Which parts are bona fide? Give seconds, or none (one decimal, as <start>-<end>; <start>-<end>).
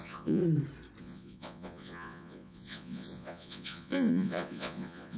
0.4-1.0